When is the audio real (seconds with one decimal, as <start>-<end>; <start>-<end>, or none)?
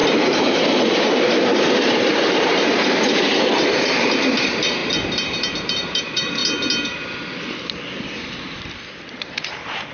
0.0-0.6; 6.4-9.1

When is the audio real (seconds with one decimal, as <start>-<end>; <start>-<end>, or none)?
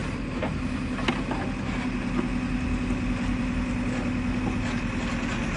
0.0-5.6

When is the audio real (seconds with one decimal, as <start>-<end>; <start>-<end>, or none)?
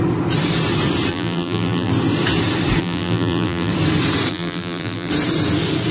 0.0-1.1; 1.9-2.8; 3.7-4.3; 5.1-5.9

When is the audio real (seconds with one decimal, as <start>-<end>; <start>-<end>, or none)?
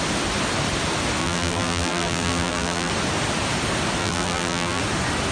0.0-1.2; 2.9-4.0; 4.8-5.3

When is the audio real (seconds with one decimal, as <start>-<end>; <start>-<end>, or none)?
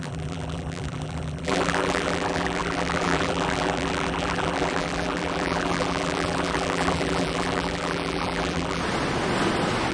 8.8-9.9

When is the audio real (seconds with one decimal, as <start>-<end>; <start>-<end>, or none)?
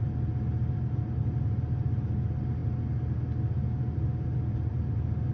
0.0-5.3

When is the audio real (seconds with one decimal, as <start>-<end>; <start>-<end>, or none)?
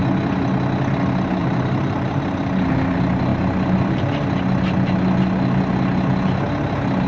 0.0-1.4; 2.2-3.3; 4.0-7.1